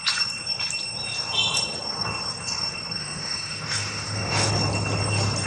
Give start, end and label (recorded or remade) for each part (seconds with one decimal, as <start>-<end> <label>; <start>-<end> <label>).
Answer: 0.0-3.0 recorded; 3.0-4.5 remade; 4.5-5.5 recorded